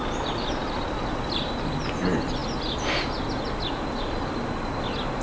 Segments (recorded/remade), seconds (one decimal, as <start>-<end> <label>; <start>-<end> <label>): 0.0-5.2 recorded